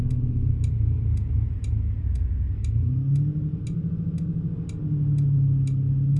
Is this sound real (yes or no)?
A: yes